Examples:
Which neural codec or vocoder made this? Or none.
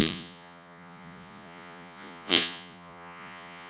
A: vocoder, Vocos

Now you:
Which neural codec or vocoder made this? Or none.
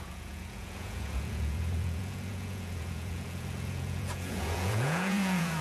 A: vocoder, Vocos